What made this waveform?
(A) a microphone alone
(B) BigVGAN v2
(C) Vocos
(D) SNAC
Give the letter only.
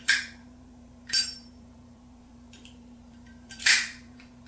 B